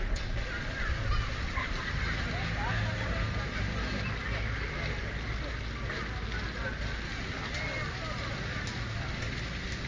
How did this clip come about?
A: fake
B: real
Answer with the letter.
B